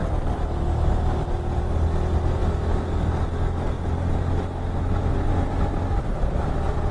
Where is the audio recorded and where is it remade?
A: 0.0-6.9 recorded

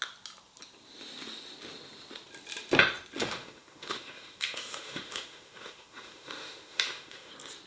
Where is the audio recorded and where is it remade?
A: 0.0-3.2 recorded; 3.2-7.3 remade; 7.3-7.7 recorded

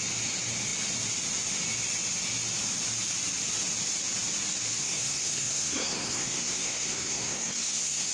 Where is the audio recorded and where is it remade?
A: 0.0-4.8 recorded; 4.8-8.1 remade

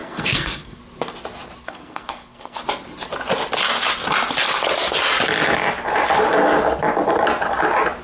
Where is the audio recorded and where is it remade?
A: 0.0-0.8 remade; 0.8-1.6 recorded; 1.6-2.6 remade; 2.6-8.0 recorded